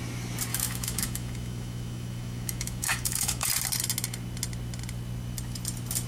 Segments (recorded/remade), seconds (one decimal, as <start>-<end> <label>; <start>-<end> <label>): 0.0-0.5 recorded; 0.5-3.5 remade; 3.5-6.1 recorded